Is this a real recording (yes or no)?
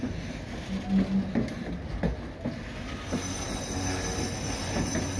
yes